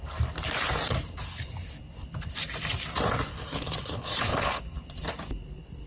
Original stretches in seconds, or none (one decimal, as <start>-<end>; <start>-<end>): 0.0-3.3; 4.6-5.9